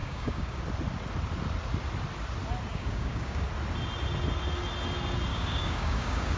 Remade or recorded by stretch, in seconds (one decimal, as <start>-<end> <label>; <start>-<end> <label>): 0.0-0.6 remade; 0.6-2.7 recorded; 2.7-3.5 remade; 3.5-5.3 recorded; 5.3-6.4 remade